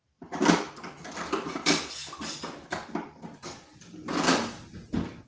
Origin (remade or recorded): recorded